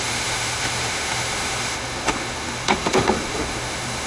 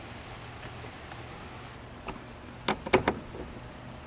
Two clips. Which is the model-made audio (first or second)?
first